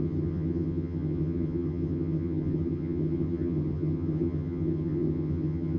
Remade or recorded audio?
remade